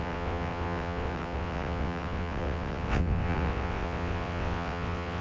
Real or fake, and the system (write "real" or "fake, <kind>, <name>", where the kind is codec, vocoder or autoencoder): fake, vocoder, WaveNeXt